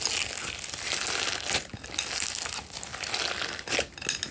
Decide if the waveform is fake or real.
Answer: real